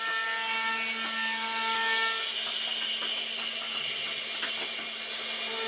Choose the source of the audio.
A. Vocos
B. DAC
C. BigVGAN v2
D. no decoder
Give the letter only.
D